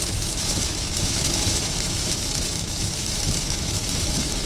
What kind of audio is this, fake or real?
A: fake